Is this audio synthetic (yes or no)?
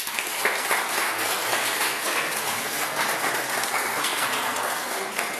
yes